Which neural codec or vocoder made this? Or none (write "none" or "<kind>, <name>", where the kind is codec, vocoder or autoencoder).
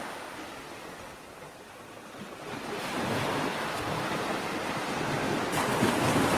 none